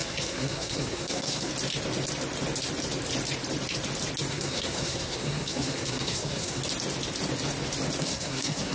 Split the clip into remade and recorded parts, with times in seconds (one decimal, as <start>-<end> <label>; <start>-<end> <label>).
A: 0.0-1.5 remade; 1.5-4.3 recorded; 4.3-6.6 remade; 6.6-8.0 recorded; 8.0-8.7 remade